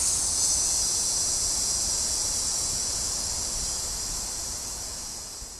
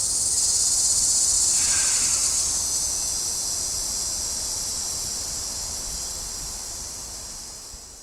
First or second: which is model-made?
first